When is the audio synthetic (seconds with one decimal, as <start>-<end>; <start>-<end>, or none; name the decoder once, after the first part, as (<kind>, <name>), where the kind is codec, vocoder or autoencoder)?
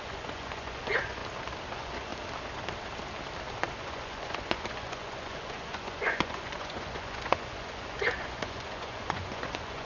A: 0.0-1.2 (vocoder, Vocos); 1.7-2.1; 3.8-9.9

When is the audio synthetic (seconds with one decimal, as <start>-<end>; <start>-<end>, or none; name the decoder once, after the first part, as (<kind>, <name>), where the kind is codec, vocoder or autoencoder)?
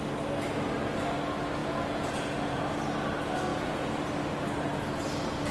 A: 1.6-2.6 (vocoder, Vocos); 3.5-4.1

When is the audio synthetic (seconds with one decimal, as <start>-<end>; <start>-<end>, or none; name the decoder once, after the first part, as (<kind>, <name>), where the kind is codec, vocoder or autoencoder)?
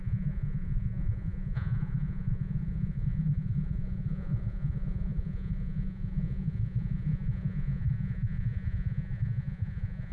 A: 0.0-10.1 (vocoder, Vocos)